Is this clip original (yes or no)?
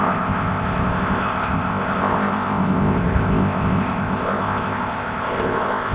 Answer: no